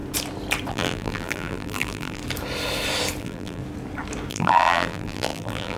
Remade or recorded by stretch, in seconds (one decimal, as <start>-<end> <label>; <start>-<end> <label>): 0.0-0.7 recorded; 0.7-2.2 remade; 2.2-3.2 recorded; 3.2-3.6 remade; 3.6-4.3 recorded; 4.3-5.8 remade